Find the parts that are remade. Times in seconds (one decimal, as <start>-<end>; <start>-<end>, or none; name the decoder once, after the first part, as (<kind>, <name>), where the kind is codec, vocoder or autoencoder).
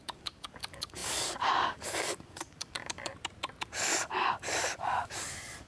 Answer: 0.0-3.1 (codec, DAC); 3.7-5.7